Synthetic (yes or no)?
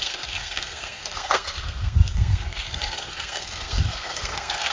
yes